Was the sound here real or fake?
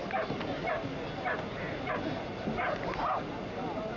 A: real